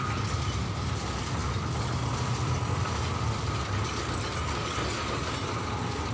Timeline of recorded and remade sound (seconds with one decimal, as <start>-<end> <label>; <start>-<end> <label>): 0.0-6.1 recorded